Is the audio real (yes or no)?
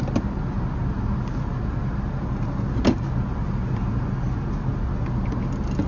yes